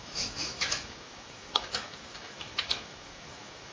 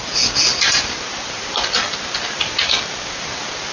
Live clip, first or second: second